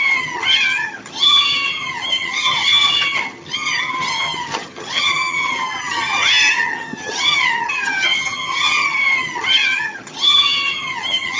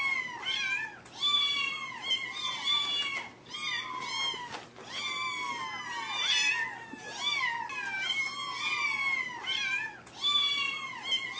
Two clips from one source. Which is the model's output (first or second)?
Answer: first